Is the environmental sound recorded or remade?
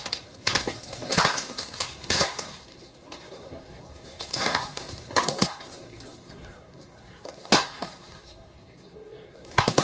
remade